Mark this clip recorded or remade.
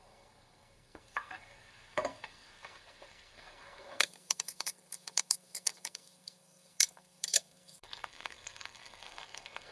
remade